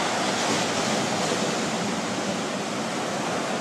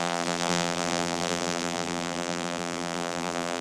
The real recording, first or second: first